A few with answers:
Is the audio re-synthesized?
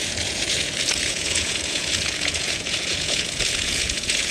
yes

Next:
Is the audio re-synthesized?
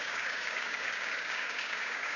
yes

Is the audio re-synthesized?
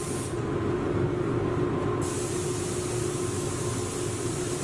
no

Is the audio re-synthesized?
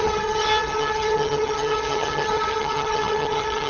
yes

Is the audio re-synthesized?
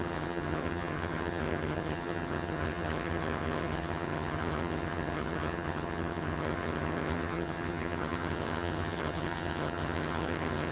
yes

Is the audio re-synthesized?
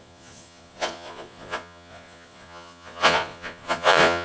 yes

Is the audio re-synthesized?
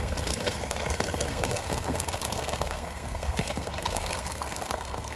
yes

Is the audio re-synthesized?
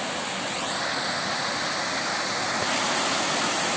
no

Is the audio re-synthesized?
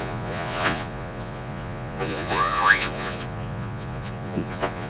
yes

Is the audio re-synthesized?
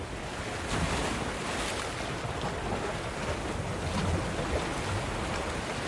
no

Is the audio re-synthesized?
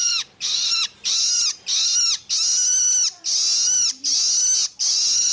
no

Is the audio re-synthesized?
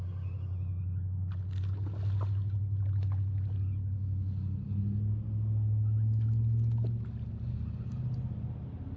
no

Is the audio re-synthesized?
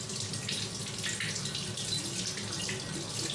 no